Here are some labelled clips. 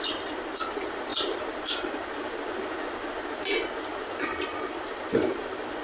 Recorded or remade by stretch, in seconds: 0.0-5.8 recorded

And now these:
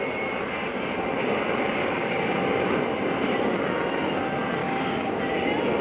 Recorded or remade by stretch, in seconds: 0.0-1.8 recorded; 1.8-2.5 remade; 2.5-4.6 recorded; 4.6-5.2 remade; 5.2-5.8 recorded

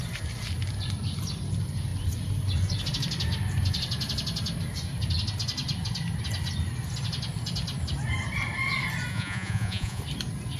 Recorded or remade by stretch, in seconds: 0.0-9.1 recorded; 9.1-10.0 remade; 10.0-10.6 recorded

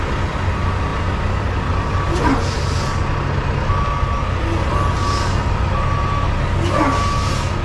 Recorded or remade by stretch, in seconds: 0.0-7.6 recorded

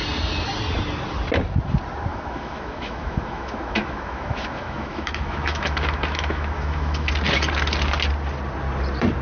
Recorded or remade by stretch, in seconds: 0.0-2.1 recorded; 2.1-7.1 remade; 7.1-9.2 recorded